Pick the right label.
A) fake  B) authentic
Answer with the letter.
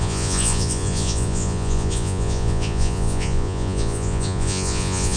A